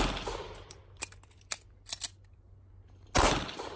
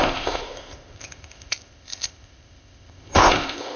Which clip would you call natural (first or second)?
first